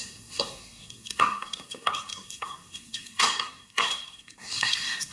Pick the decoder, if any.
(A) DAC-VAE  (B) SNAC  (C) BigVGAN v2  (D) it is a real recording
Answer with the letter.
B